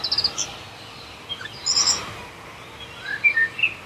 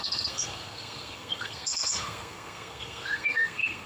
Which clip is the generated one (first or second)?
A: second